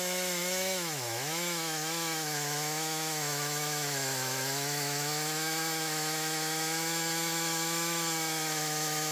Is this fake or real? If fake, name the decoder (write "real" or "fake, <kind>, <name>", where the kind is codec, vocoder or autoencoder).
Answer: fake, autoencoder, DAC-VAE